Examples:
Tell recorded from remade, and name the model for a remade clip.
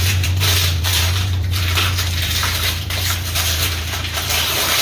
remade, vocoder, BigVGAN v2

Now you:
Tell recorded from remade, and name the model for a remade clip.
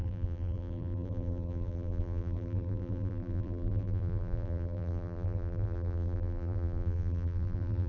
remade, vocoder, BigVGAN v2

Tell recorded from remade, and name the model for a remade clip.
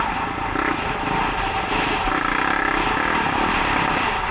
recorded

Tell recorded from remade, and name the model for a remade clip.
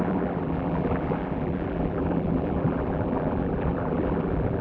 remade, vocoder, BigVGAN v2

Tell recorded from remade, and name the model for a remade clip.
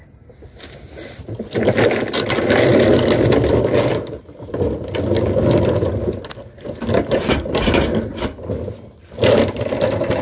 recorded